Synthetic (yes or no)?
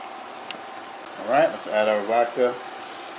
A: no